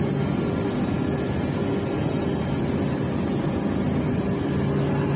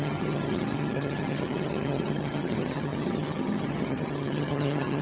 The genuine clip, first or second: first